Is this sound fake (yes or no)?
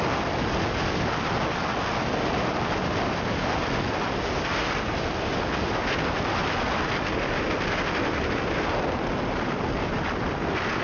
no